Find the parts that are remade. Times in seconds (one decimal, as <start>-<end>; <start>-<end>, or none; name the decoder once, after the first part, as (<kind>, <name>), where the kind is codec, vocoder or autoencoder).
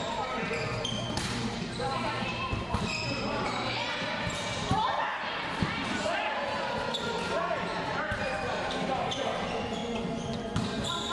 0.0-9.8 (vocoder, BigVGAN v2)